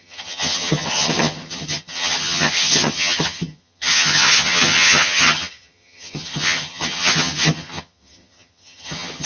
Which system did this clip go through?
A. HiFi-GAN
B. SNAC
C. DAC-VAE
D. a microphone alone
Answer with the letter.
A